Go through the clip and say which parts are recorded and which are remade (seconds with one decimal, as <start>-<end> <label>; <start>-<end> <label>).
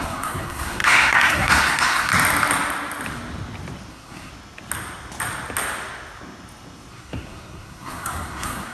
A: 0.0-2.1 remade; 2.1-3.9 recorded; 3.9-4.3 remade; 4.3-6.9 recorded; 6.9-8.7 remade